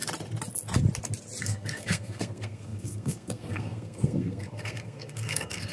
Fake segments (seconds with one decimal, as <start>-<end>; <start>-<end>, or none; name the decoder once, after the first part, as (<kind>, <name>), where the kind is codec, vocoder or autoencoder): 1.4-5.7 (codec, SNAC)